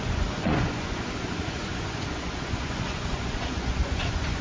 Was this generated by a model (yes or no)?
yes